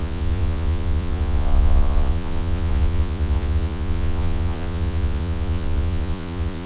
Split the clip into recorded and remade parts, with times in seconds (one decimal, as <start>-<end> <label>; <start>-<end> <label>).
0.0-6.7 remade